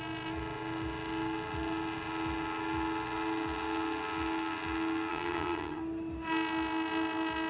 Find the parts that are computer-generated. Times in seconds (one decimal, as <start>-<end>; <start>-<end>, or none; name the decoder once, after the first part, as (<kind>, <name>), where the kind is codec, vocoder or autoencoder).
5.1-5.8 (vocoder, HiFi-GAN)